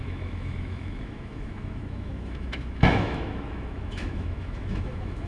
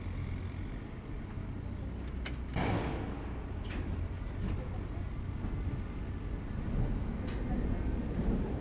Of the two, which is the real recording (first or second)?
second